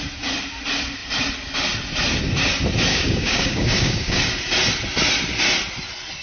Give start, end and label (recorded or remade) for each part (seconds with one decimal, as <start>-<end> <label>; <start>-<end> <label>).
0.0-2.9 recorded; 2.9-4.2 remade; 4.2-6.2 recorded

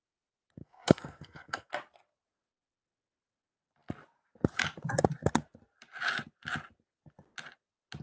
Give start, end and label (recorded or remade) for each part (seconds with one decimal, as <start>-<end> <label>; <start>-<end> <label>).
0.0-0.6 recorded; 0.6-1.7 remade; 1.7-8.0 recorded

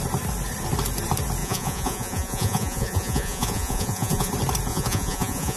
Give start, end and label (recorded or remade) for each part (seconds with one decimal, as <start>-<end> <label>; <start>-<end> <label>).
0.0-1.4 recorded; 1.4-4.3 remade; 4.3-4.7 recorded; 4.7-5.6 remade

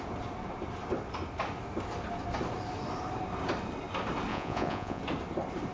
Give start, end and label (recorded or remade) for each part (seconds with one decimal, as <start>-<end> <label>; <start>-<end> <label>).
0.0-4.3 recorded; 4.3-5.0 remade; 5.0-5.7 recorded

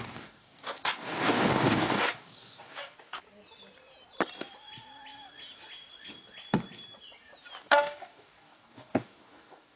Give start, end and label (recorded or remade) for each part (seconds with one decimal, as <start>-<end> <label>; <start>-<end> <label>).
0.0-3.2 remade; 3.2-7.6 recorded; 7.6-9.8 remade

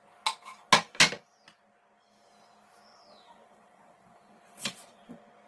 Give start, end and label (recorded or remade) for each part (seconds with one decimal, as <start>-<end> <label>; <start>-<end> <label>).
0.0-2.9 recorded; 2.9-5.1 remade; 5.1-5.5 recorded